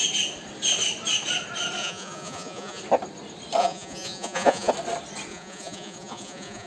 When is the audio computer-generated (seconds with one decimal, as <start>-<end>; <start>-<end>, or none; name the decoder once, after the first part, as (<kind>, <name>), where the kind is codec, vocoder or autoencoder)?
1.8-2.8 (vocoder, Vocos); 3.6-4.7; 5.3-6.7